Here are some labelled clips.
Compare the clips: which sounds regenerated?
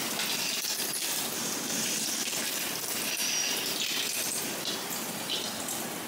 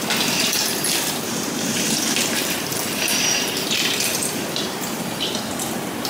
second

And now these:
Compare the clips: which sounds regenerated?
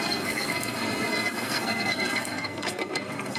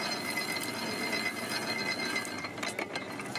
first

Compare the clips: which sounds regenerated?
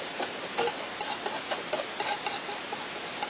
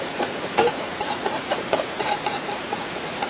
second